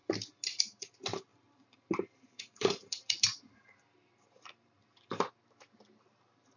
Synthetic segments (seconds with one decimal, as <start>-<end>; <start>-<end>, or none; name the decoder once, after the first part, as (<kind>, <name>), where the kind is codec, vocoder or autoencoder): 1.3-5.3 (vocoder, BigVGAN v2)